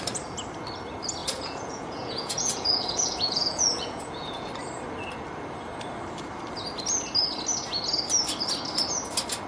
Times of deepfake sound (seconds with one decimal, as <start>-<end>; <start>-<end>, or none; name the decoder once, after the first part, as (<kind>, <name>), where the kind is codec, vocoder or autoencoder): 1.2-4.5 (vocoder, Vocos)